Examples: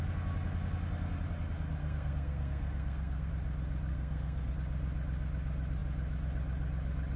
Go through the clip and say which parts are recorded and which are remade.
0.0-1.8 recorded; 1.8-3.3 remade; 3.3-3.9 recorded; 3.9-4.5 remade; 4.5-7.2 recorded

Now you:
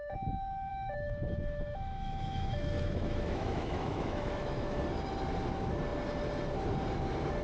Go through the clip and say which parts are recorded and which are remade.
0.0-0.7 recorded; 0.7-4.8 remade; 4.8-7.4 recorded

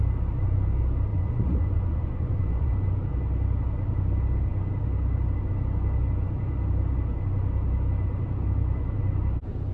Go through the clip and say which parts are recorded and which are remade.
0.0-1.1 recorded; 1.1-2.7 remade; 2.7-9.7 recorded

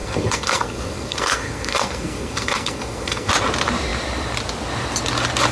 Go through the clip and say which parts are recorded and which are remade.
0.0-3.3 remade; 3.3-5.5 recorded

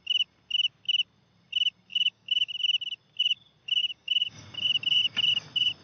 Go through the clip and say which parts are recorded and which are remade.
0.0-1.9 recorded; 1.9-2.5 remade; 2.5-3.8 recorded; 3.8-4.4 remade; 4.4-5.8 recorded